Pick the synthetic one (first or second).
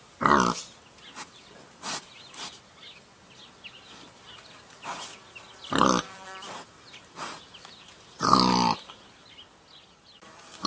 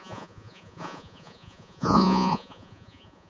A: second